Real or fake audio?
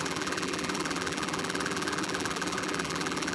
fake